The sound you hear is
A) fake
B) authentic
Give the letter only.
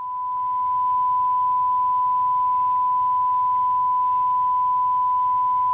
B